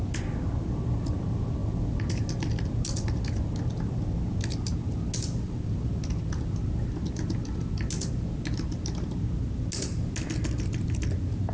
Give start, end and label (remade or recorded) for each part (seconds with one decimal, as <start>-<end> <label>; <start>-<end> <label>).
0.0-11.5 recorded